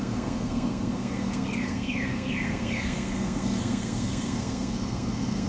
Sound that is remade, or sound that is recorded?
remade